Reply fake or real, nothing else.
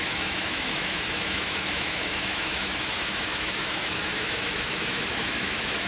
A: fake